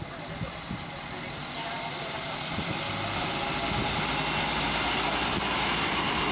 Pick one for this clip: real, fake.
real